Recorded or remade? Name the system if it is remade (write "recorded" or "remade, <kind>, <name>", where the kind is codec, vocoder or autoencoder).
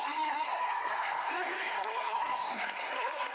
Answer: remade, codec, SNAC